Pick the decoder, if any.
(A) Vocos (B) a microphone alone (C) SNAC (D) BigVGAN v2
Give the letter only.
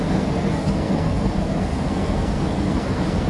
C